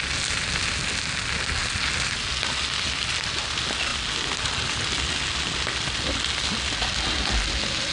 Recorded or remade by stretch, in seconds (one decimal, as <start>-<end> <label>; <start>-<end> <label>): 0.0-7.9 recorded